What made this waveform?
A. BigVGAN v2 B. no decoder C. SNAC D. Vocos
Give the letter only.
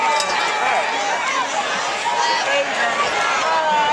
B